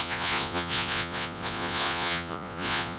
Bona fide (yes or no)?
no